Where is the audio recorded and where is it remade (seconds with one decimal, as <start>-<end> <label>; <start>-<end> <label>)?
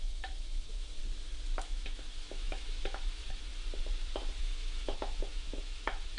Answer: 0.0-1.0 remade; 1.0-1.6 recorded; 1.6-3.5 remade; 3.5-4.4 recorded; 4.4-6.2 remade